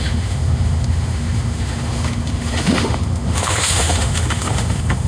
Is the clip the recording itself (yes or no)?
no